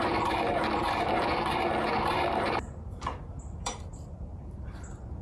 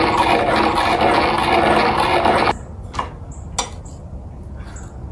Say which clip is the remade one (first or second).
first